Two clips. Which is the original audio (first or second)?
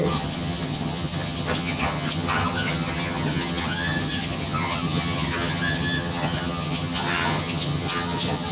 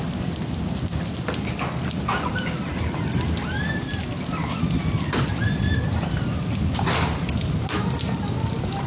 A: second